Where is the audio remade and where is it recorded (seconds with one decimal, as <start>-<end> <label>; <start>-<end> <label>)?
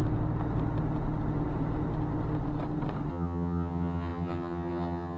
0.0-3.1 recorded; 3.1-5.2 remade